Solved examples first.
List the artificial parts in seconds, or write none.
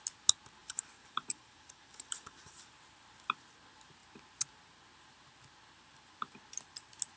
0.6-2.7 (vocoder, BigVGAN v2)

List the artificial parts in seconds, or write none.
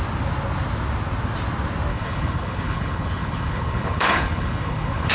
1.9-5.1 (codec, HILCodec)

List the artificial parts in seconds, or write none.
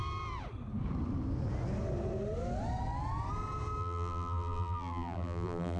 3.8-5.8 (vocoder, BigVGAN v2)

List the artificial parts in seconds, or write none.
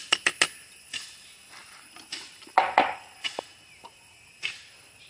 none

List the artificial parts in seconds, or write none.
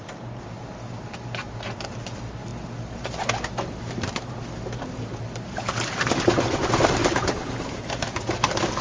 7.0-7.9 (vocoder, BigVGAN v2)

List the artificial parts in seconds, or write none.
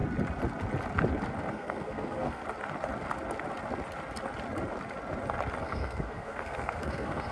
1.5-2.4 (codec, SNAC); 5.6-7.3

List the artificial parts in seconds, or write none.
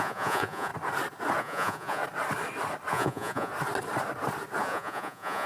0.0-0.7 (vocoder, Vocos); 1.4-2.0; 2.9-3.5; 4.6-5.5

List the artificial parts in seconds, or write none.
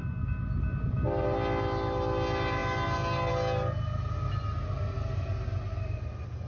none